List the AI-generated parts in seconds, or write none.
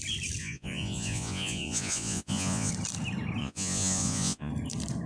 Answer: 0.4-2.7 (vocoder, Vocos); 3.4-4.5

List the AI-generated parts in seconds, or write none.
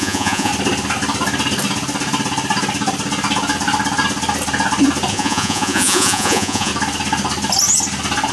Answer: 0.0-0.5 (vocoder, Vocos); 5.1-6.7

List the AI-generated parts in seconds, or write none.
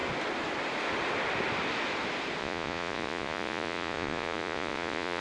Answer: 2.4-5.2 (vocoder, Vocos)